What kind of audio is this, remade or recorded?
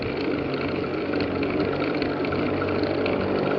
recorded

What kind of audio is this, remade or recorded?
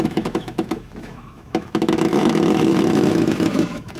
remade